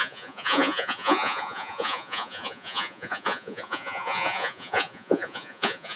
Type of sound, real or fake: fake